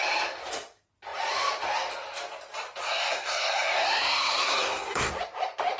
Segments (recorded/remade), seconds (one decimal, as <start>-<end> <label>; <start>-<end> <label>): 0.0-2.8 recorded; 2.8-5.1 remade; 5.1-5.8 recorded